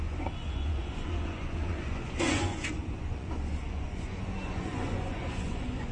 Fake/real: fake